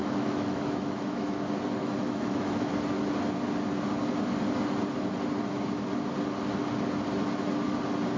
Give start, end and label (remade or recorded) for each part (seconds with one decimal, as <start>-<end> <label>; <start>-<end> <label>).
0.0-1.3 remade; 1.3-1.8 recorded; 1.8-2.7 remade; 2.7-8.2 recorded